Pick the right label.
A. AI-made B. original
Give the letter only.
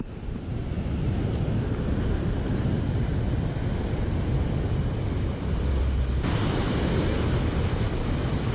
B